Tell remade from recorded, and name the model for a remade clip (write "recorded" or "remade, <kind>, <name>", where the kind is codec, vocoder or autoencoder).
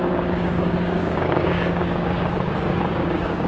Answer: remade, codec, DAC